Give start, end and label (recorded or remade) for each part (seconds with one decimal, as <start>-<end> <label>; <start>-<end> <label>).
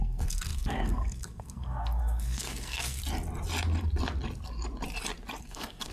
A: 0.0-3.0 remade; 3.0-5.4 recorded; 5.4-5.9 remade